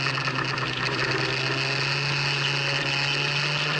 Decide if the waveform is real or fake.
real